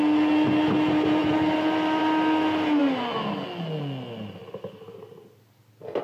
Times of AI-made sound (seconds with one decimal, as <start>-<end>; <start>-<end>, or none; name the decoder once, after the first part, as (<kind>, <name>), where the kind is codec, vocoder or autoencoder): 1.2-2.0 (vocoder, BigVGAN v2)